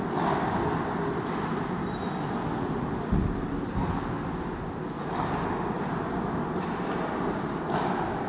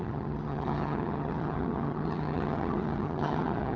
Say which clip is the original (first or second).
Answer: first